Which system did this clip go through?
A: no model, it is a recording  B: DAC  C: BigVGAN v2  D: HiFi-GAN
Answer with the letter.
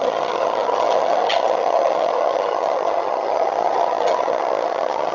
D